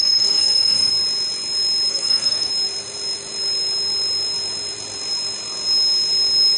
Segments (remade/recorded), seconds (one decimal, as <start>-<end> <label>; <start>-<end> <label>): 0.0-0.9 remade; 0.9-1.9 recorded; 1.9-2.5 remade; 2.5-6.6 recorded